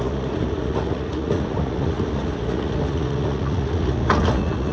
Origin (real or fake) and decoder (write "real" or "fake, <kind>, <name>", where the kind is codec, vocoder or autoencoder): fake, vocoder, Vocos